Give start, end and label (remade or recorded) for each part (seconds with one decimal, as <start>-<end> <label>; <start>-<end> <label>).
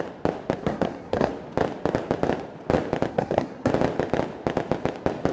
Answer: 0.0-0.6 recorded; 0.6-1.3 remade; 1.3-3.1 recorded; 3.1-3.7 remade; 3.7-5.3 recorded